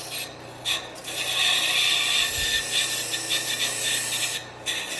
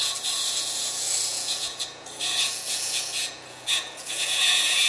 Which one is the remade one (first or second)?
second